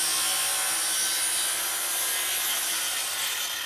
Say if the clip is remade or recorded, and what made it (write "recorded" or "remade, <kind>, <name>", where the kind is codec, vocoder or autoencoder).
recorded